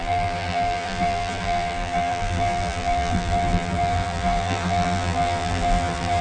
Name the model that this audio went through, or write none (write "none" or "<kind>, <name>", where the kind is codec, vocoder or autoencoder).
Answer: vocoder, BigVGAN v2